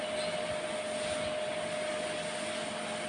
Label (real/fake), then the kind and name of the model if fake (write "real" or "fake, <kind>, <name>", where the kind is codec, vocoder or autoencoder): real